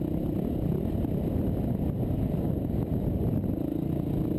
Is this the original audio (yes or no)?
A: yes